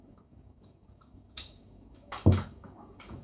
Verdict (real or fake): fake